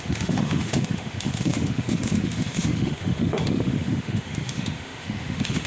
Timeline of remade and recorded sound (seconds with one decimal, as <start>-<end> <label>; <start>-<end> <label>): 0.0-5.7 remade